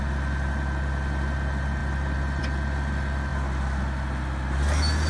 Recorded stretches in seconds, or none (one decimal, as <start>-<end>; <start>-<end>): 0.0-5.1